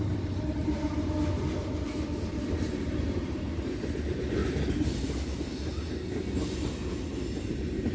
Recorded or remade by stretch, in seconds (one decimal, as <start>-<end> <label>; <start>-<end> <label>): 0.0-0.6 recorded; 0.6-1.1 remade; 1.1-1.6 recorded; 1.6-3.6 remade; 3.6-4.4 recorded; 4.4-5.0 remade; 5.0-7.9 recorded